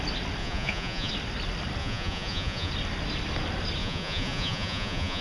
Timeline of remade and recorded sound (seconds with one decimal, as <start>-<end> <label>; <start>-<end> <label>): 0.0-0.4 recorded; 0.4-1.1 remade; 1.1-1.8 recorded; 1.8-2.7 remade; 2.7-3.8 recorded; 3.8-5.2 remade